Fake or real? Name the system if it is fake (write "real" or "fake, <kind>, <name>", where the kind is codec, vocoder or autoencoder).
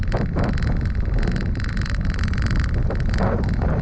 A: real